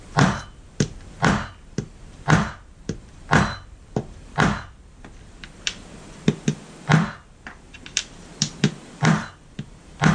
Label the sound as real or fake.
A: fake